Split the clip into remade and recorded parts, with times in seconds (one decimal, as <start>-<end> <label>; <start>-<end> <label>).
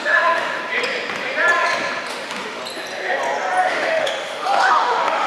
0.0-0.6 remade; 0.6-2.1 recorded; 2.1-2.6 remade; 2.6-3.6 recorded; 3.6-5.3 remade